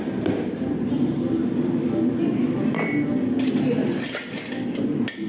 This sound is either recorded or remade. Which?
recorded